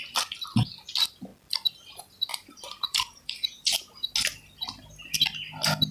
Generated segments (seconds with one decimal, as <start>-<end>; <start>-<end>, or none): 2.3-4.1